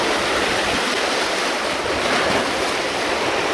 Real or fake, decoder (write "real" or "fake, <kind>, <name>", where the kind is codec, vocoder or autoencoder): fake, vocoder, BigVGAN v2